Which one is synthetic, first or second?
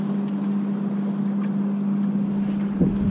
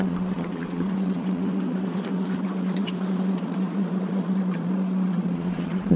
second